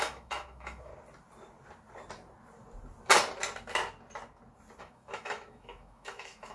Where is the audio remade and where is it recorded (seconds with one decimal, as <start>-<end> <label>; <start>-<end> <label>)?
0.0-0.9 remade; 0.9-4.8 recorded; 4.8-6.5 remade